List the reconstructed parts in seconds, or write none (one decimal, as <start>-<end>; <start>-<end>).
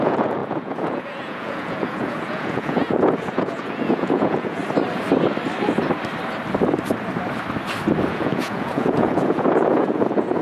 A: 0.0-4.6; 8.1-10.4